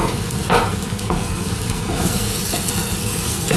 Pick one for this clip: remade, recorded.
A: remade